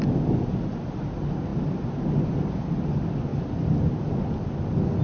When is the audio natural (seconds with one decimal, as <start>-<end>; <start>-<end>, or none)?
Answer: 0.0-5.0